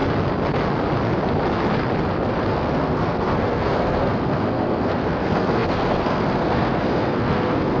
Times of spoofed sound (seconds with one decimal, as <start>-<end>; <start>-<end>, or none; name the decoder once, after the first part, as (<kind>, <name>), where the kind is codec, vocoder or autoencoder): 2.5-7.8 (codec, SNAC)